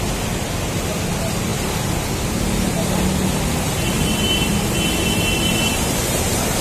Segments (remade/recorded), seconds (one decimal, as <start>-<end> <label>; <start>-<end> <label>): 0.0-6.6 recorded